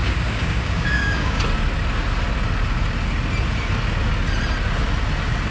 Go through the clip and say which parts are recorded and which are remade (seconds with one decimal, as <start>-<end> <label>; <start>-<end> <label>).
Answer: 0.0-1.4 remade; 1.4-5.5 recorded